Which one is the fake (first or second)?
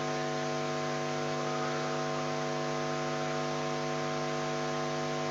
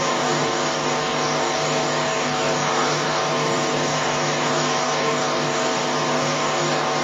second